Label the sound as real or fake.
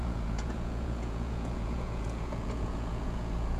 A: fake